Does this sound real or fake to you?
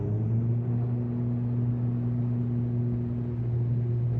real